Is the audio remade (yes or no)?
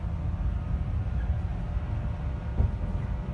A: no